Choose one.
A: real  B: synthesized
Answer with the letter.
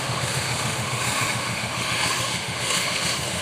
B